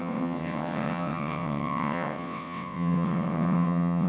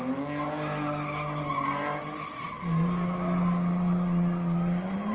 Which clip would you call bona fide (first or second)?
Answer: second